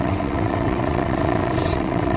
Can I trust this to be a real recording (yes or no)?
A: no